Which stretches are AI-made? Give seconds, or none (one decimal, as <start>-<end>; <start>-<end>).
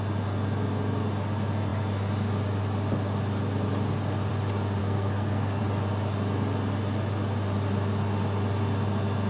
4.8-5.6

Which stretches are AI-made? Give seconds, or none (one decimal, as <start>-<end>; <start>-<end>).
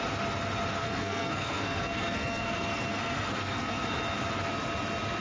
0.8-3.9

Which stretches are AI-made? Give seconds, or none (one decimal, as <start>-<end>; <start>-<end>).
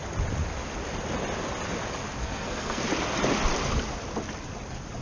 2.2-2.8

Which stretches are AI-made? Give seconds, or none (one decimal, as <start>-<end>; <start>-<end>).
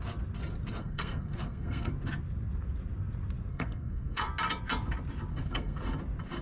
0.8-1.9; 3.5-4.3; 5.3-5.8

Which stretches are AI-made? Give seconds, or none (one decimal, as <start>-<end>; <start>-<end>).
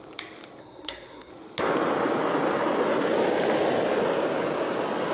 0.6-1.3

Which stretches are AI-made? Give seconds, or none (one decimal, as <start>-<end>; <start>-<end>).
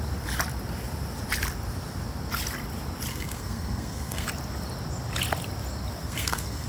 3.1-4.3; 6.0-6.7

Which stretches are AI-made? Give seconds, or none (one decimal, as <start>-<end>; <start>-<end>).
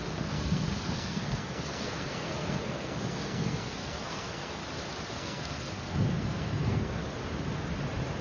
0.0-4.6; 5.1-7.0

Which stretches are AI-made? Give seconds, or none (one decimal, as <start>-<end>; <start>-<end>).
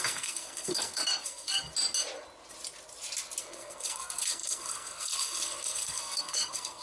0.0-1.7; 3.4-6.8